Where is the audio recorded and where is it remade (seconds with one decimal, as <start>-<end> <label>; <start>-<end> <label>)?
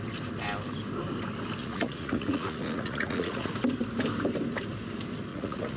0.0-1.6 recorded; 1.6-3.5 remade; 3.5-5.3 recorded; 5.3-5.8 remade